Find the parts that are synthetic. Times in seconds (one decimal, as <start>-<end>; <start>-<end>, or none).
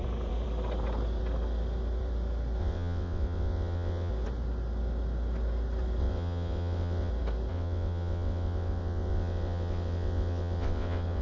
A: 2.6-4.1; 6.0-7.1; 7.5-11.2